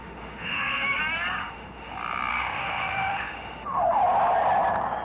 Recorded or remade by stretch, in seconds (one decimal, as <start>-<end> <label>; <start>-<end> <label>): 0.0-1.0 remade; 1.0-1.4 recorded; 1.4-1.9 remade; 1.9-2.3 recorded; 2.3-4.0 remade; 4.0-5.0 recorded